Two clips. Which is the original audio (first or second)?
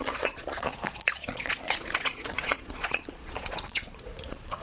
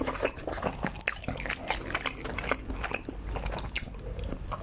second